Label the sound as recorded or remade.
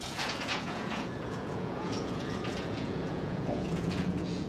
remade